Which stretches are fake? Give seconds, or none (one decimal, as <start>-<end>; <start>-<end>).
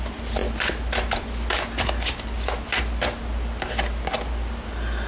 none